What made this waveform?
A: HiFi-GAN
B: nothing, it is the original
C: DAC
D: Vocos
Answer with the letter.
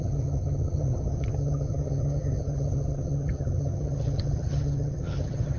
A